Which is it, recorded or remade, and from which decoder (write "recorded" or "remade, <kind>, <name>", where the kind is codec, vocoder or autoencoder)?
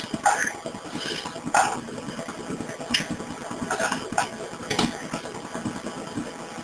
remade, vocoder, BigVGAN v2